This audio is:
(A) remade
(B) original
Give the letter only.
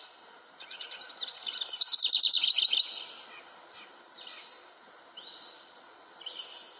B